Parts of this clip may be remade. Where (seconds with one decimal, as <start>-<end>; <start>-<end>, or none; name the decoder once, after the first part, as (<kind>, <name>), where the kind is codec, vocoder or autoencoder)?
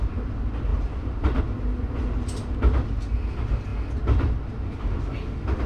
0.7-1.4 (vocoder, BigVGAN v2)